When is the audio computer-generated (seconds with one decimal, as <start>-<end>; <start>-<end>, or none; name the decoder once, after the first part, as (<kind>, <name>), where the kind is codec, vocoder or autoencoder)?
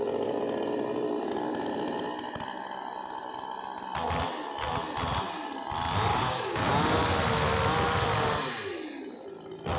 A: 6.1-6.7 (codec, DAC)